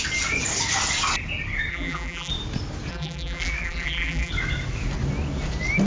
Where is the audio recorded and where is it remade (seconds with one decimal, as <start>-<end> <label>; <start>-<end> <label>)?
0.0-1.7 recorded; 1.7-2.3 remade; 2.3-2.9 recorded; 2.9-4.3 remade; 4.3-5.9 recorded